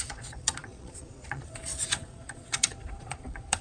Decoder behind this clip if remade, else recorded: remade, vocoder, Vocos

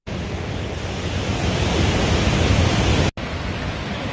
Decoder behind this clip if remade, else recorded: recorded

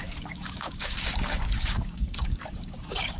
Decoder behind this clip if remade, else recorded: remade, codec, DAC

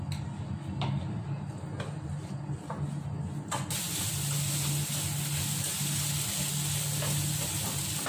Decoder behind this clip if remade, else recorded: recorded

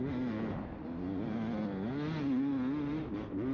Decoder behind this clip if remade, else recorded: recorded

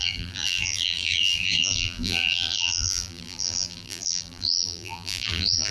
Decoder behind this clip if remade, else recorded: remade, vocoder, BigVGAN v2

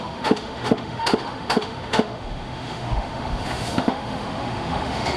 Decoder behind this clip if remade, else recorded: remade, autoencoder, DAC-VAE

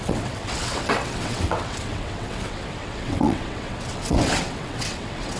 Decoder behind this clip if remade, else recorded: remade, vocoder, WaveNeXt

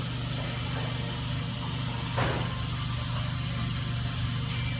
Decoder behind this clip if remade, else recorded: recorded